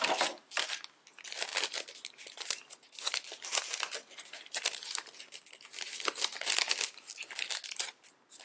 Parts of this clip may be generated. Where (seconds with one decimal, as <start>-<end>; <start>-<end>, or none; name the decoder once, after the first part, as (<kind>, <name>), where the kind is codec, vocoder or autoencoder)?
none